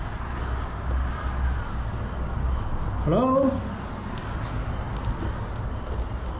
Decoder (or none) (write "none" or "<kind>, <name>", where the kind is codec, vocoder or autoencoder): none